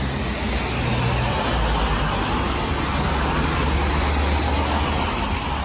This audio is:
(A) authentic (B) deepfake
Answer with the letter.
A